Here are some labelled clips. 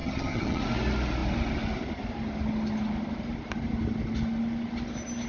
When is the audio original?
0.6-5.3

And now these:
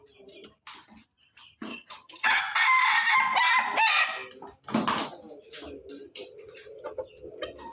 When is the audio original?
0.0-1.7; 2.4-7.7

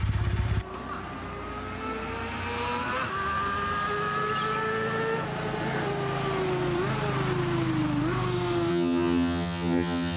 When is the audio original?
0.0-8.7

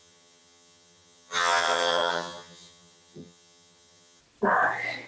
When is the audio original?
4.2-5.1

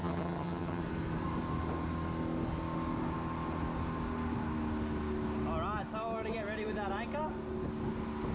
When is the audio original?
0.8-8.3

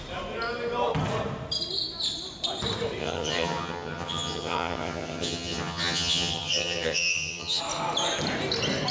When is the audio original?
0.0-3.0; 7.6-8.9

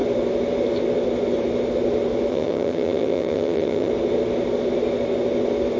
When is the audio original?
0.0-2.3; 3.9-5.8